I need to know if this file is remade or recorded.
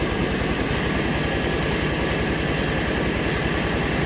recorded